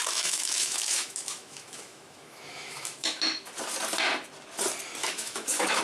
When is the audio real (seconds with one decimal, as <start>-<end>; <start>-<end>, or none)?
3.5-5.0